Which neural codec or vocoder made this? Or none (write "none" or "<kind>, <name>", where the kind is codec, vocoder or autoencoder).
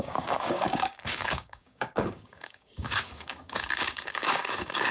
codec, DAC